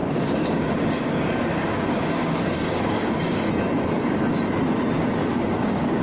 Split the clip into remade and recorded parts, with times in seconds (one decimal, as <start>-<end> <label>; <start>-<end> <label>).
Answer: 0.0-3.5 remade; 3.5-5.2 recorded; 5.2-6.0 remade